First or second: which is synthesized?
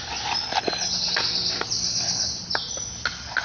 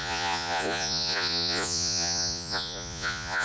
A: second